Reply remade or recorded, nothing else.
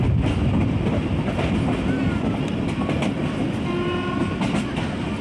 recorded